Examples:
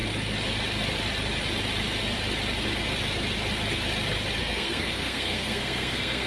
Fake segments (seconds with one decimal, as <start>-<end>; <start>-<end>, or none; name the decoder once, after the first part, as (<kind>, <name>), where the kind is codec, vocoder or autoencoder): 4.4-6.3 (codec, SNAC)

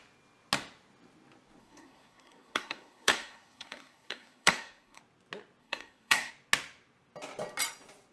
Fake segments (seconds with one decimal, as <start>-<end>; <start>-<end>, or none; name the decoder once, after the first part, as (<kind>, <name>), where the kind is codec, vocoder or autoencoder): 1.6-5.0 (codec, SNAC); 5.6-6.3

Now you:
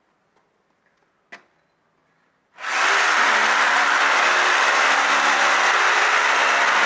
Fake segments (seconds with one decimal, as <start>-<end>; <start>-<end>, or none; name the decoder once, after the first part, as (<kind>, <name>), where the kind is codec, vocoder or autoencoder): none